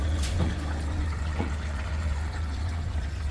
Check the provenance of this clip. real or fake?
fake